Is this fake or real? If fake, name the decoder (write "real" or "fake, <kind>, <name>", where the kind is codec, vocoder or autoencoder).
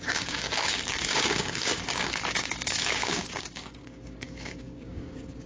fake, codec, DAC